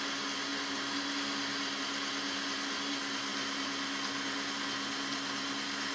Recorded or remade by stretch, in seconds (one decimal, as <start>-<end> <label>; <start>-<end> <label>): 0.0-5.9 recorded

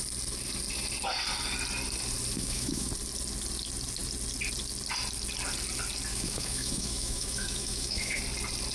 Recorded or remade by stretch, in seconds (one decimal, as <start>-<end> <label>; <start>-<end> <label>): 0.0-2.4 recorded; 2.4-2.9 remade; 2.9-6.1 recorded; 6.1-8.2 remade; 8.2-8.7 recorded

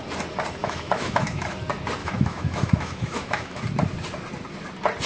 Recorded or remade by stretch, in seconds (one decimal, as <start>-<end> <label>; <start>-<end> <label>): 0.0-0.6 recorded; 0.6-1.5 remade; 1.5-2.0 recorded; 2.0-3.6 remade; 3.6-5.1 recorded

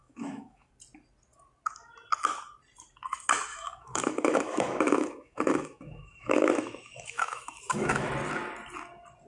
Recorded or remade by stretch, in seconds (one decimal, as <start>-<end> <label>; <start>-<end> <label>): 0.0-0.7 remade; 0.7-3.5 recorded; 3.5-8.1 remade; 8.1-9.3 recorded

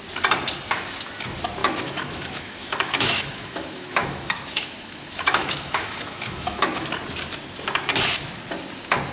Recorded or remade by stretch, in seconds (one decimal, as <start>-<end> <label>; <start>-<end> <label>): 0.0-1.6 recorded; 1.6-6.9 remade; 6.9-9.1 recorded

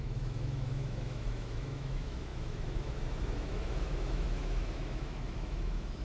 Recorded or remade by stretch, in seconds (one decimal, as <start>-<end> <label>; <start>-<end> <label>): 0.0-6.0 remade

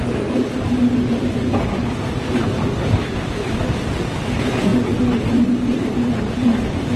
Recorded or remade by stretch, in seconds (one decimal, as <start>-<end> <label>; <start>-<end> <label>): 0.0-3.0 recorded; 3.0-3.6 remade; 3.6-7.0 recorded

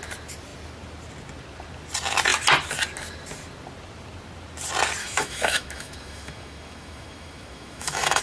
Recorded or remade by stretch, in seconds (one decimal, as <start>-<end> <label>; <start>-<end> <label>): 0.0-5.0 recorded; 5.0-8.2 remade